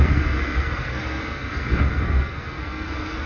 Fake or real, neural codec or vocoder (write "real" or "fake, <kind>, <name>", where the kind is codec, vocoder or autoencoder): fake, codec, SNAC